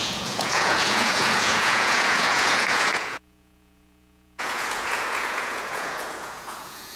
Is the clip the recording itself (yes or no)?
no